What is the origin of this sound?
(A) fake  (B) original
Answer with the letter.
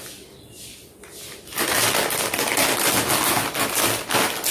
B